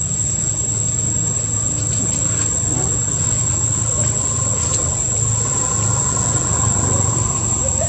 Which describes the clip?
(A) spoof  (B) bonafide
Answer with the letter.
B